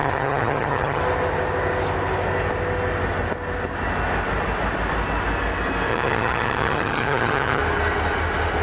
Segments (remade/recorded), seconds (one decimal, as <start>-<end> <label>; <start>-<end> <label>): 0.0-1.0 remade; 1.0-5.9 recorded; 5.9-7.6 remade; 7.6-8.6 recorded